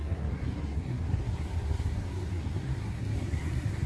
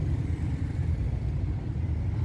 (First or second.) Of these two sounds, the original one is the second